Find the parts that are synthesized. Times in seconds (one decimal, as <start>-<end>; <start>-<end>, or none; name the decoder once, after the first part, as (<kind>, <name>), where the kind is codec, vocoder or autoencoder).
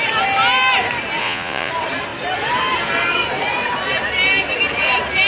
1.2-1.7 (vocoder, Vocos)